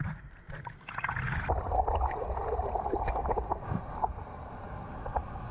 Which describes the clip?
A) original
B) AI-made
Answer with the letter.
A